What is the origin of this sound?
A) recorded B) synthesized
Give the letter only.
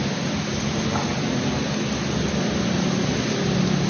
A